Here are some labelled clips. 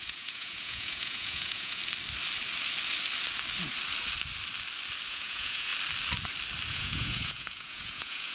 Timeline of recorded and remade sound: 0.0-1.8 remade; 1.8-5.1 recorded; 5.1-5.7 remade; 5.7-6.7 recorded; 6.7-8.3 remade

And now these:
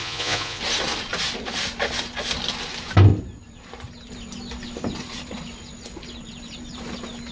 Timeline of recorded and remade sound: 0.0-0.6 remade; 0.6-7.3 recorded

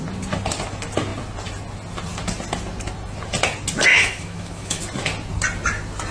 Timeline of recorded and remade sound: 0.0-3.9 recorded; 3.9-4.8 remade; 4.8-6.1 recorded

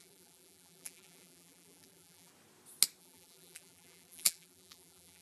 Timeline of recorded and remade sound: 0.0-2.3 remade; 2.3-3.0 recorded; 3.0-5.2 remade

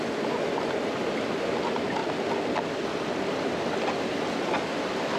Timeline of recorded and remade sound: 0.0-5.2 recorded

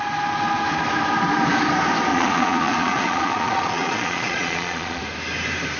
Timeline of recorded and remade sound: 0.0-2.1 recorded; 2.1-5.0 remade; 5.0-5.8 recorded

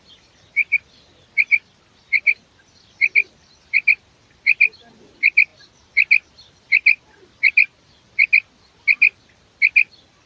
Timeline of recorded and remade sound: 0.0-10.3 recorded

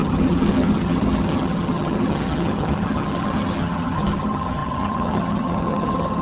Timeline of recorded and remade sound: 0.0-6.2 remade